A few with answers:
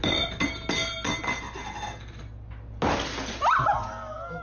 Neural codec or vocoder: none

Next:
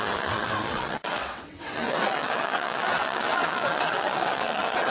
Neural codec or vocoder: vocoder, WaveNeXt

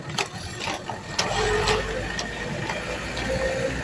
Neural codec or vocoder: none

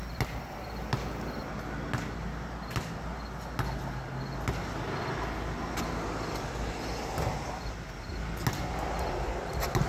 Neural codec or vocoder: none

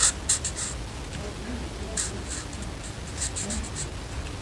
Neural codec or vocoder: none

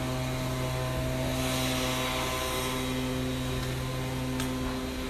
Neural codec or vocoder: none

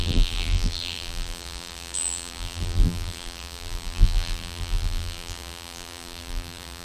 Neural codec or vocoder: vocoder, BigVGAN v2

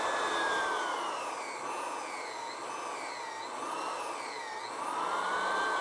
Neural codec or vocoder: none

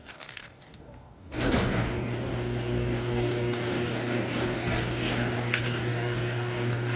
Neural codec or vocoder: codec, DAC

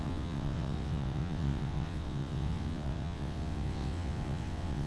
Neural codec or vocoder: vocoder, WaveNeXt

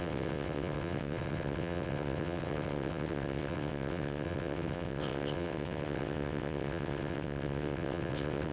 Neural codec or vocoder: vocoder, WaveNeXt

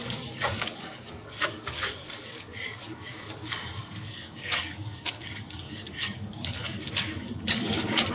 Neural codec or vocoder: codec, DAC